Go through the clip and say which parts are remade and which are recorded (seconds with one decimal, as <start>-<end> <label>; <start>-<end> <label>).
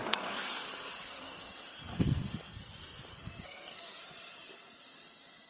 0.0-2.7 remade; 2.7-3.1 recorded; 3.1-4.0 remade; 4.0-5.5 recorded